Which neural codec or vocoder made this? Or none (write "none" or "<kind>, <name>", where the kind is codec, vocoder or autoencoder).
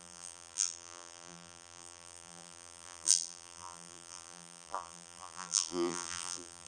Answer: vocoder, BigVGAN v2